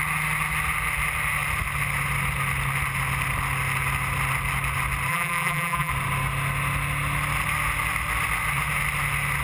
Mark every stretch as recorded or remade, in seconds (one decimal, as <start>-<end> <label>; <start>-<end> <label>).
0.0-5.1 recorded; 5.1-5.9 remade; 5.9-9.4 recorded